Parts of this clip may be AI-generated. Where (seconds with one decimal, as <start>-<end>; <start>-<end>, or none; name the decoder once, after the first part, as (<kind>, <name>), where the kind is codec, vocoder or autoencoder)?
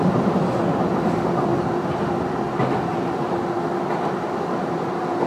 none